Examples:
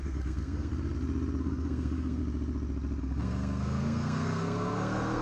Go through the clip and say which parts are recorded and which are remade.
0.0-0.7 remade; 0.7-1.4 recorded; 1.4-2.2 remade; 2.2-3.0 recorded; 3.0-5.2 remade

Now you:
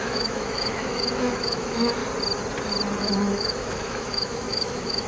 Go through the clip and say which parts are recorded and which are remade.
0.0-2.0 remade; 2.0-3.0 recorded; 3.0-5.1 remade

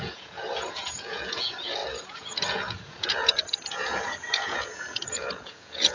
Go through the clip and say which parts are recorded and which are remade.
0.0-5.9 remade

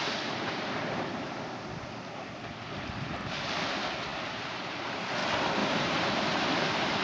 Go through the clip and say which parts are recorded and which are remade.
0.0-4.1 recorded; 4.1-4.9 remade; 4.9-5.6 recorded; 5.6-6.4 remade; 6.4-7.0 recorded

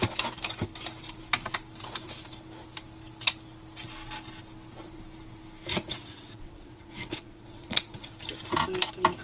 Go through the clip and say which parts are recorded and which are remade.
0.0-5.7 recorded; 5.7-8.1 remade; 8.1-9.2 recorded